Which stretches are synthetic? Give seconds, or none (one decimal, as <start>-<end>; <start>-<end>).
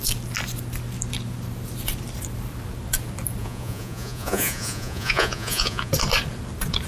3.4-5.9